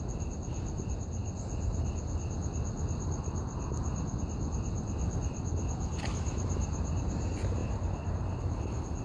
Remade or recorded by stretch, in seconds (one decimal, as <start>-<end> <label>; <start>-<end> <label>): 0.0-9.0 recorded